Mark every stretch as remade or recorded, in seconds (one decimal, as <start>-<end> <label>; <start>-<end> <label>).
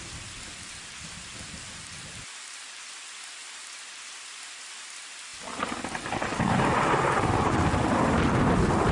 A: 0.0-8.9 remade